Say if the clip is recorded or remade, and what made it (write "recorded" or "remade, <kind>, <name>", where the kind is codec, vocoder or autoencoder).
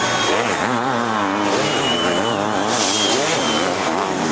remade, vocoder, BigVGAN v2